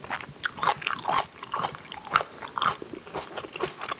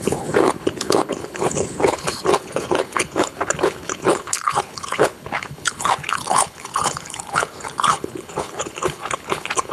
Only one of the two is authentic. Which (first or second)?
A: first